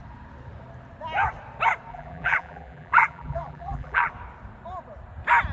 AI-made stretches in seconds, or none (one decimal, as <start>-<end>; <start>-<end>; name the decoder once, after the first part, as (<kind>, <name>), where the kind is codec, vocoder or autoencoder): 1.9-4.1 (vocoder, BigVGAN v2)